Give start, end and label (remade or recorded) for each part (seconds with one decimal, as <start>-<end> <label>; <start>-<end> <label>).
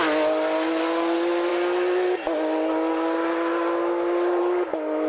0.0-5.1 recorded